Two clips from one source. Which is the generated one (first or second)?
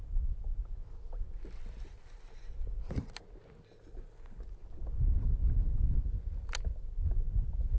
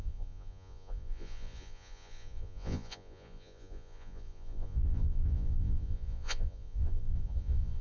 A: second